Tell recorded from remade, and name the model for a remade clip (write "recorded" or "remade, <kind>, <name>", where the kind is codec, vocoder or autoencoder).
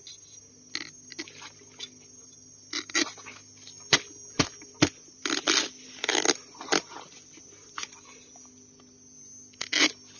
recorded